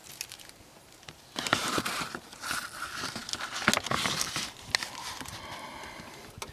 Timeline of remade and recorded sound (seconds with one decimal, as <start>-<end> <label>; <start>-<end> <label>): 0.0-1.2 remade; 1.2-1.6 recorded; 1.6-2.1 remade; 2.1-6.5 recorded